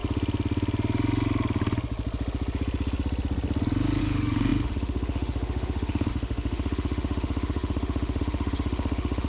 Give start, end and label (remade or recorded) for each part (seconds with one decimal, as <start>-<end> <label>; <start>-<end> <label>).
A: 0.0-4.0 recorded; 4.0-9.3 remade